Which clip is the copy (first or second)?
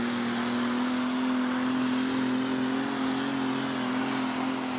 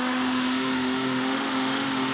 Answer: second